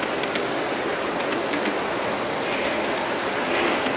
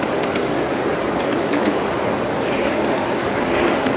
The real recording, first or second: first